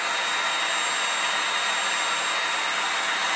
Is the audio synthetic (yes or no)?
no